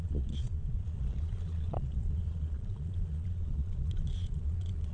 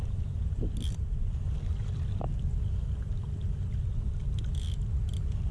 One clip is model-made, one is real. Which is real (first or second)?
second